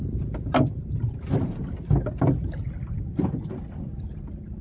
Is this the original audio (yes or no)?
yes